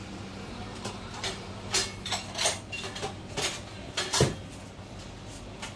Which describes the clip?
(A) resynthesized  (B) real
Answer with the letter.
B